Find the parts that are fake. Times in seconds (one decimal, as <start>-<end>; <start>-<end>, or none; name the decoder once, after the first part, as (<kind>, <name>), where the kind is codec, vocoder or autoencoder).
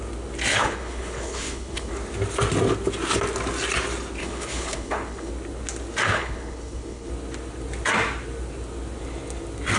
0.5-1.9 (codec, HILCodec); 4.2-5.3; 6.1-7.1